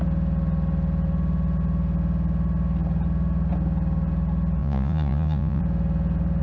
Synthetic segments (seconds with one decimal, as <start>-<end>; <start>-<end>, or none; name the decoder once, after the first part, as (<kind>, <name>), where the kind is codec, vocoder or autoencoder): 4.6-5.6 (vocoder, Vocos)